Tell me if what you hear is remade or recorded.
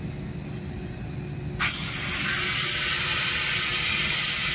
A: recorded